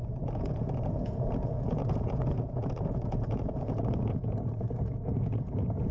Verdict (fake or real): fake